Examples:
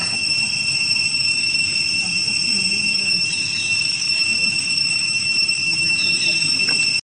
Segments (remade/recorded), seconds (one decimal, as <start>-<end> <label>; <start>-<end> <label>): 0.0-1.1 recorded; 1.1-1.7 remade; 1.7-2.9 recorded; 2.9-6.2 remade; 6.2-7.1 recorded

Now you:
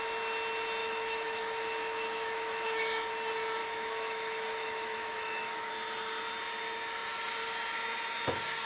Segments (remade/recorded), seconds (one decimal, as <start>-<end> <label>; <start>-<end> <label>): 0.0-0.8 recorded; 0.8-3.1 remade; 3.1-3.6 recorded; 3.6-5.7 remade; 5.7-8.7 recorded

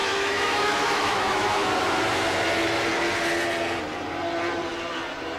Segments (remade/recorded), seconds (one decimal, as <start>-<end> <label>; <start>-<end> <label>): 0.0-1.7 remade; 1.7-5.4 recorded

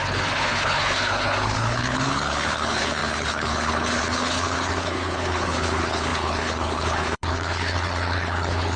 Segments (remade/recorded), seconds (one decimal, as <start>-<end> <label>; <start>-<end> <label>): 0.0-8.8 remade

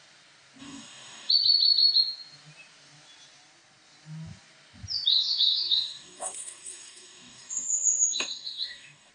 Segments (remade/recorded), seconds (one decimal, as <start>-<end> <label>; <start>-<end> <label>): 0.0-0.6 recorded; 0.6-1.3 remade; 1.3-5.1 recorded; 5.1-9.1 remade

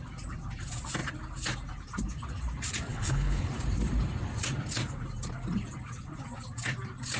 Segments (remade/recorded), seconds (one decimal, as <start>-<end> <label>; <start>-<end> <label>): 0.0-2.9 recorded; 2.9-3.5 remade; 3.5-7.2 recorded